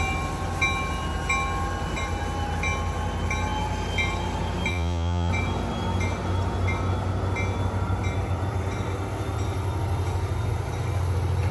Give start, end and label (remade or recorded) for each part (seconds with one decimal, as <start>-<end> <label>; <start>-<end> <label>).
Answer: 0.0-4.7 recorded; 4.7-5.3 remade; 5.3-11.5 recorded